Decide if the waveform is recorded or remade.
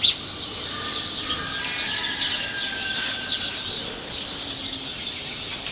recorded